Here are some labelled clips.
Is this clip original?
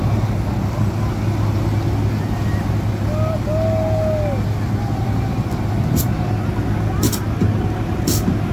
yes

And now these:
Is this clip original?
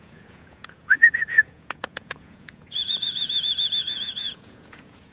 no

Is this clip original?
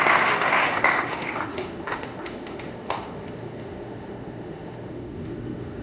no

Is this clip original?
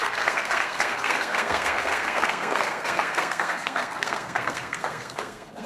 no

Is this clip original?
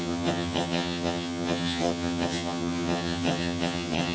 no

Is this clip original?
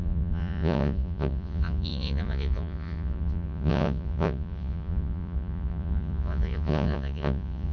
no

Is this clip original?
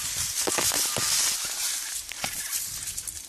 yes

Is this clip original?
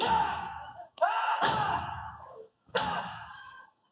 no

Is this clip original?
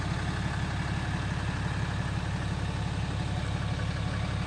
yes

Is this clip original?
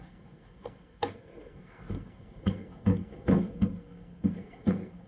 no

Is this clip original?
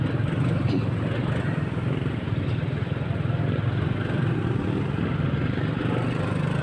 yes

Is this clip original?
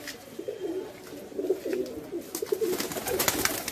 yes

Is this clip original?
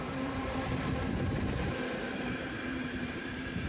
no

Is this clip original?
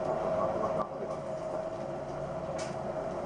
yes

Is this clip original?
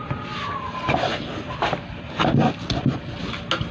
yes